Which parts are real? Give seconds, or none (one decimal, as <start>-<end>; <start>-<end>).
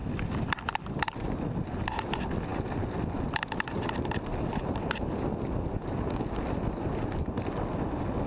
0.0-0.7